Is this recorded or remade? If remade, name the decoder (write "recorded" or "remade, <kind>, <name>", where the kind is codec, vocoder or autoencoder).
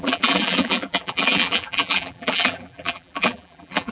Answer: remade, vocoder, BigVGAN v2